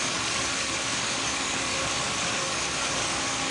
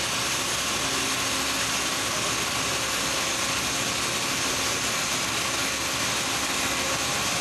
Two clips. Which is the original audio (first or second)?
second